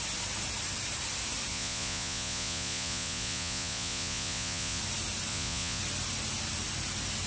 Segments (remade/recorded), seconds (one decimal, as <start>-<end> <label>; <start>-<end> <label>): 0.0-1.5 recorded; 1.5-4.8 remade; 4.8-5.3 recorded; 5.3-5.8 remade; 5.8-7.3 recorded